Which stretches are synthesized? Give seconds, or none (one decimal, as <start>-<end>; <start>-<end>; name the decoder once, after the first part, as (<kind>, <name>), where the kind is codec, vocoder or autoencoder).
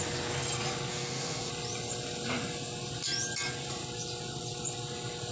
0.9-1.5 (codec, SNAC)